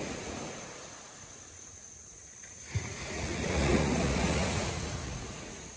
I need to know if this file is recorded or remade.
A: remade